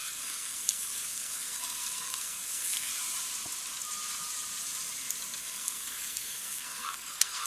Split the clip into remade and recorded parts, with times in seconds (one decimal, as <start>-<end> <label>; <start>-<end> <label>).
0.0-2.9 remade; 2.9-5.4 recorded; 5.4-7.5 remade